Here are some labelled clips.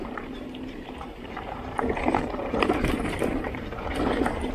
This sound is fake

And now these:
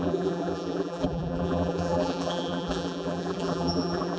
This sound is fake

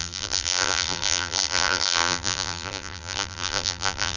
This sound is fake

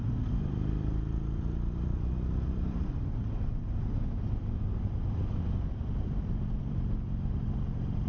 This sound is fake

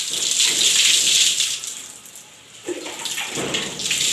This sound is real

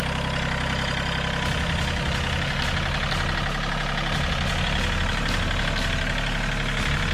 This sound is real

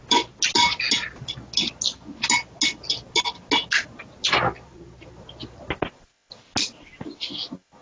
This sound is real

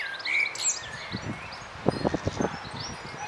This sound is real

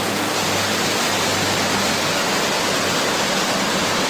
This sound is real